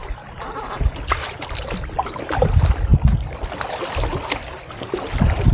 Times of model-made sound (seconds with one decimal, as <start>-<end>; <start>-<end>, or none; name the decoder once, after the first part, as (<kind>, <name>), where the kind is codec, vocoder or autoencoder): 0.0-1.0 (vocoder, BigVGAN v2)